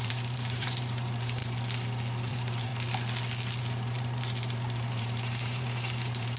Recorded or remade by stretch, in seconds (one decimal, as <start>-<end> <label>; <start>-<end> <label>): 0.0-1.4 remade; 1.4-2.3 recorded; 2.3-2.7 remade; 2.7-3.6 recorded; 3.6-6.4 remade